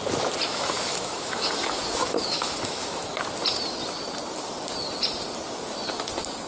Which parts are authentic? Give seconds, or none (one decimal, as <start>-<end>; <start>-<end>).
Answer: 0.0-0.5; 3.1-6.5